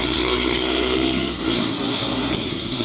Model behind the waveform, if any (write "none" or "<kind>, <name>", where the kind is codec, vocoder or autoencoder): codec, SNAC